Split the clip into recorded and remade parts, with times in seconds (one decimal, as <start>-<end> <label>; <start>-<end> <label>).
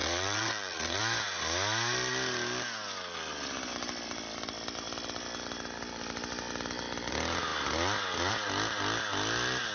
0.0-1.0 remade; 1.0-9.7 recorded